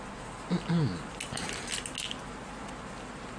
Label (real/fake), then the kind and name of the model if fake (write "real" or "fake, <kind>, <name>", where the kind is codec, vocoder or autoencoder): real